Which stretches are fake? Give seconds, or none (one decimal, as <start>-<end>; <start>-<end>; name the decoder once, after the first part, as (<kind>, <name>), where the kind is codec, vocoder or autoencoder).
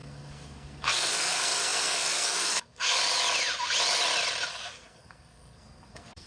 0.0-3.0 (codec, SNAC); 4.5-6.3